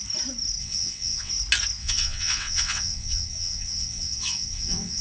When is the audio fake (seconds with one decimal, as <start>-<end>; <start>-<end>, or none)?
0.6-1.3; 1.8-5.0